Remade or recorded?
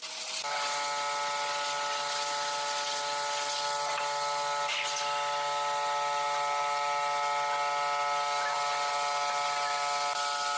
recorded